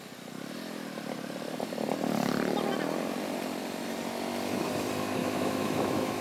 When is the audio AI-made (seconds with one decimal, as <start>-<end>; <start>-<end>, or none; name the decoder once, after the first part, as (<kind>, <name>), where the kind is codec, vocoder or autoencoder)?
5.2-6.2 (autoencoder, DAC-VAE)